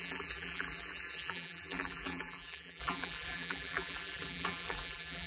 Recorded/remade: remade